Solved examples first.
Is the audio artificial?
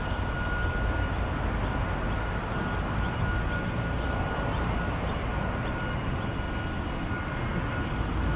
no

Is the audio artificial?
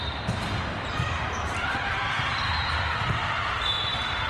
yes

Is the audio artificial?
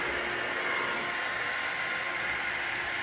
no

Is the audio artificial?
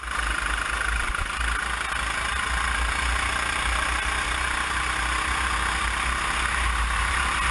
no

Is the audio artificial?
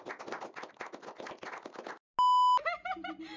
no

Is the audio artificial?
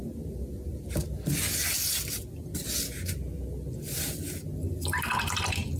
no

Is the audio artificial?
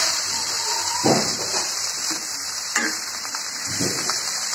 yes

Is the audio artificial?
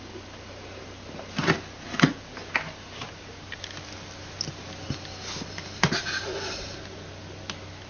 no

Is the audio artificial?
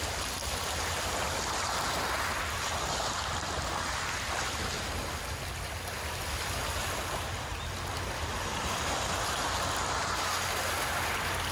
no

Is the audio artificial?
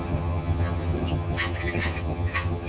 yes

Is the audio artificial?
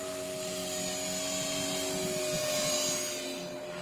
no